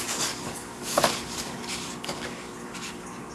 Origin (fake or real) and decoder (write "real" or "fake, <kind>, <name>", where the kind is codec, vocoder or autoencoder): fake, codec, DAC